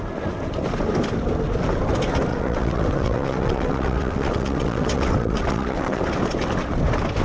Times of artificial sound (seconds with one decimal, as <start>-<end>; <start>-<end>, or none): 2.3-6.0